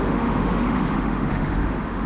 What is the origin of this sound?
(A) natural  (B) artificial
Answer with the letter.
B